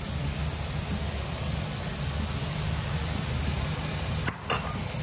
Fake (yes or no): no